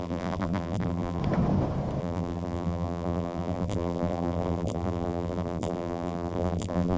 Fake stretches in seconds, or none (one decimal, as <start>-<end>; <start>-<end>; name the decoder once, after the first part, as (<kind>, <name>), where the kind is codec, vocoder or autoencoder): 0.0-1.2 (vocoder, BigVGAN v2); 2.0-7.0